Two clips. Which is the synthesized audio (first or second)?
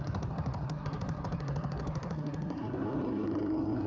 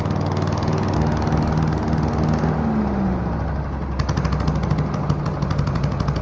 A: first